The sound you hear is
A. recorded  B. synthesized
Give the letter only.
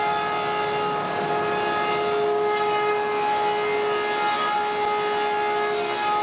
A